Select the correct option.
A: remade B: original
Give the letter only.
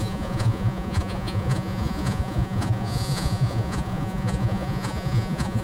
A